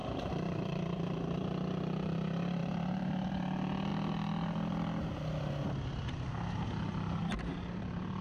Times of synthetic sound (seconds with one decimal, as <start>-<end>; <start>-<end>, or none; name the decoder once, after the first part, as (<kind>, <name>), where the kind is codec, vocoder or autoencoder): 0.0-1.5 (vocoder, BigVGAN v2); 2.6-3.3